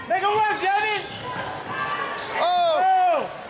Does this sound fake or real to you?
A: real